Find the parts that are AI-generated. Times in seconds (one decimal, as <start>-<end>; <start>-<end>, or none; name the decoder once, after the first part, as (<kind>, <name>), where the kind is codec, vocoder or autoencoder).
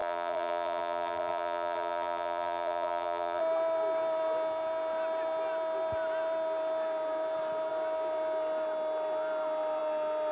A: 0.0-3.4 (vocoder, BigVGAN v2)